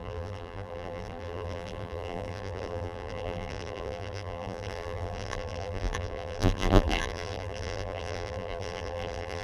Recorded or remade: remade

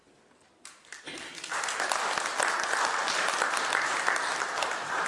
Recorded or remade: recorded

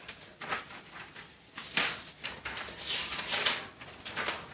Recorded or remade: recorded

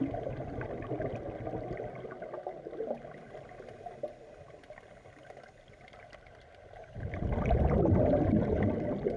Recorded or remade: recorded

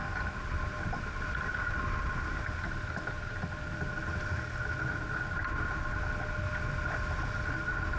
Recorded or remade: recorded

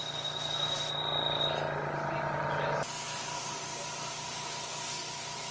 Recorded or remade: recorded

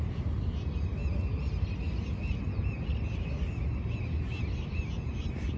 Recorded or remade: recorded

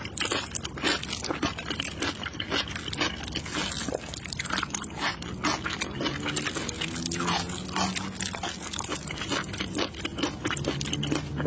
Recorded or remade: recorded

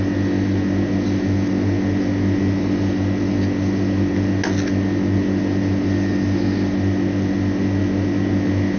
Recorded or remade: recorded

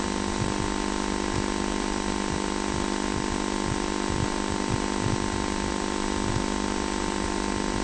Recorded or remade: recorded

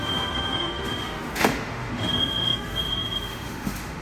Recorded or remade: remade